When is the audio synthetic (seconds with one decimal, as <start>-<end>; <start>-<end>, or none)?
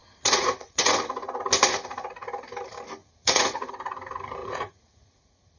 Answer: 0.0-0.8; 3.0-3.7; 4.4-5.6